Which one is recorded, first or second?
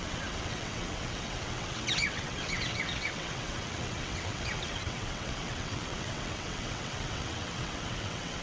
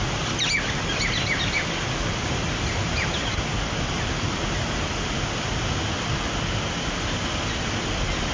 second